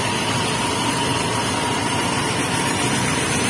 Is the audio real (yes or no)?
yes